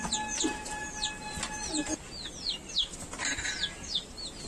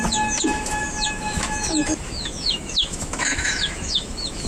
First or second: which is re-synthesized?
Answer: second